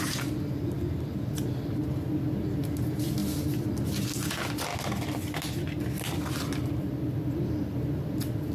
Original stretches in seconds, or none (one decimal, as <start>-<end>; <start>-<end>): 0.0-8.5